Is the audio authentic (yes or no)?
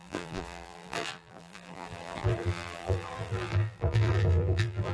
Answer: no